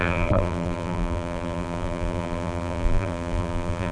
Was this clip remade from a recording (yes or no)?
yes